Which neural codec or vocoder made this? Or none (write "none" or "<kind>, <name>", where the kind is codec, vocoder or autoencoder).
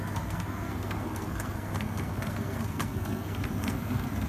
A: codec, SNAC